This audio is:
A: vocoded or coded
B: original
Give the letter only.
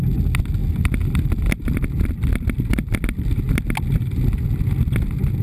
B